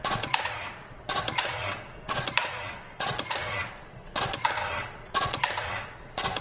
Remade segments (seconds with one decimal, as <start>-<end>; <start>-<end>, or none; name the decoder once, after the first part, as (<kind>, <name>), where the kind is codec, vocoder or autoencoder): 0.0-6.4 (vocoder, Vocos)